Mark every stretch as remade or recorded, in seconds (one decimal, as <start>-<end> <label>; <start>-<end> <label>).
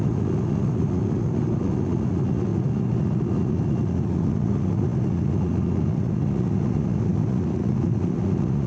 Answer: 0.0-8.7 remade